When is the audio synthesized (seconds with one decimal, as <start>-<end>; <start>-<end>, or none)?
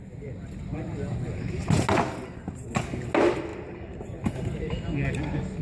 none